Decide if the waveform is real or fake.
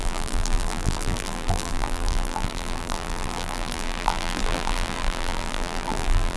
fake